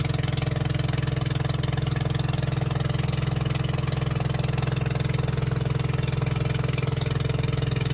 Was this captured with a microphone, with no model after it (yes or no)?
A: yes